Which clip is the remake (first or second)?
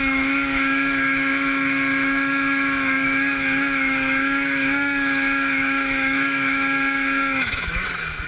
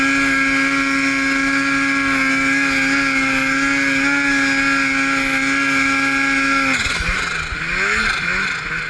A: first